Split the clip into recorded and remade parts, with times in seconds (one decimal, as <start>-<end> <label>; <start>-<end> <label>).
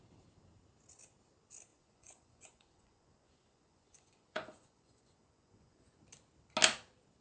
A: 0.0-1.7 recorded; 1.7-6.0 remade; 6.0-7.2 recorded